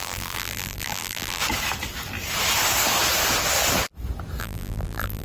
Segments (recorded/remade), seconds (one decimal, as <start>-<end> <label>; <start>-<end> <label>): 0.0-1.4 remade; 1.4-4.4 recorded; 4.4-5.2 remade